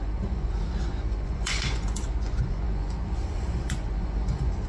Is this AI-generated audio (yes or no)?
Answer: yes